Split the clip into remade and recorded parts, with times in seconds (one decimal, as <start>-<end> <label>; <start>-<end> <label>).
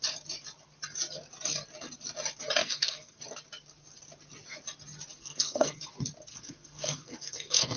0.0-2.6 recorded; 2.6-3.2 remade; 3.2-5.2 recorded; 5.2-5.8 remade; 5.8-6.3 recorded; 6.3-7.8 remade